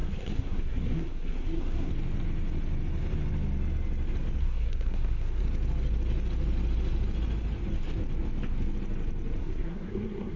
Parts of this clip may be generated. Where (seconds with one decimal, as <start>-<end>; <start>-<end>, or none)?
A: 0.0-1.9; 4.4-5.4; 9.4-10.4